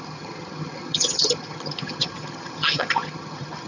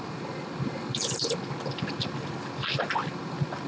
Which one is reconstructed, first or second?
first